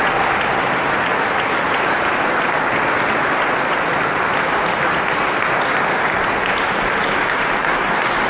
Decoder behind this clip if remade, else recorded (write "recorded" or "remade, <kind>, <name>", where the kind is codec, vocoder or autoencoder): recorded